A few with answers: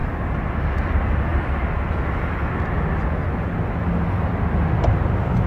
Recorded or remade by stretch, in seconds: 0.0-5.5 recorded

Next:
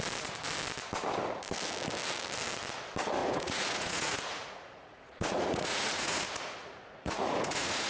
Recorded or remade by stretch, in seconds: 0.0-3.2 recorded; 3.2-7.9 remade

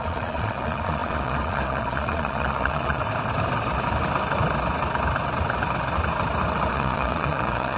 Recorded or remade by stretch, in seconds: 0.0-3.0 remade; 3.0-6.7 recorded; 6.7-7.8 remade

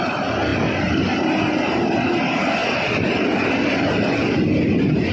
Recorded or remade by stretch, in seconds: 0.0-5.1 recorded

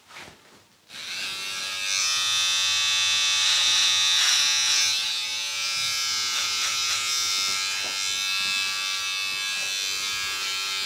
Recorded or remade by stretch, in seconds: 0.0-2.0 recorded; 2.0-7.3 remade; 7.3-10.9 recorded